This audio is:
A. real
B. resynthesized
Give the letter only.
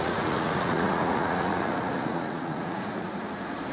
B